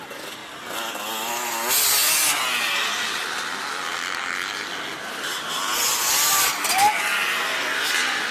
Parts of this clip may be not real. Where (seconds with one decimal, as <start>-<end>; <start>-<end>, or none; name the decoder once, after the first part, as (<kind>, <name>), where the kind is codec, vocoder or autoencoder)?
none